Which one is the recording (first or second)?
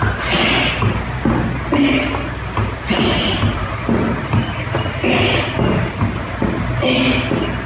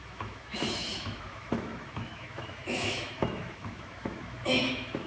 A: first